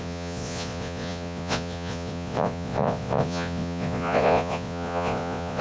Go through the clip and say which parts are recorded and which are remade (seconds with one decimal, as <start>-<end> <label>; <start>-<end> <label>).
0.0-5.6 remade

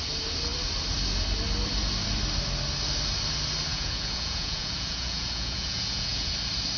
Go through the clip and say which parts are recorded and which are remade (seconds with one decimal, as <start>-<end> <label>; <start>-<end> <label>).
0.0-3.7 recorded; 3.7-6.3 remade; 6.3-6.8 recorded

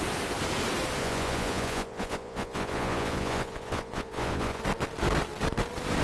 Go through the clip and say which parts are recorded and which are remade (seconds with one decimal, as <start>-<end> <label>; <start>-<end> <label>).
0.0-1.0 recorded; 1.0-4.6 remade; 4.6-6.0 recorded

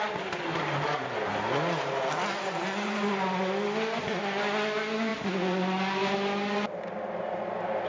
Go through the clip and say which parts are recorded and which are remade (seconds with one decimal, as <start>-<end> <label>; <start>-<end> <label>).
0.0-7.9 recorded